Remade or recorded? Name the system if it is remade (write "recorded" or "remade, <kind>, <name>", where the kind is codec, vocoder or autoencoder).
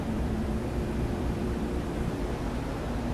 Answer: remade, vocoder, BigVGAN v2